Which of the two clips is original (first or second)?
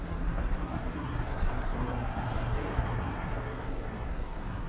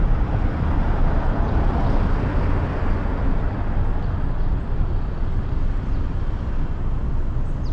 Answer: second